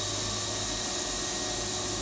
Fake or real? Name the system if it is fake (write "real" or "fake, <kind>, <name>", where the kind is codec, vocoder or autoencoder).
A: real